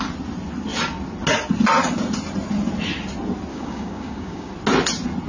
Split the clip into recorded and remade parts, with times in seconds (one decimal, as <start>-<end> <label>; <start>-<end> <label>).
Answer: 0.0-3.5 recorded; 3.5-4.5 remade; 4.5-5.3 recorded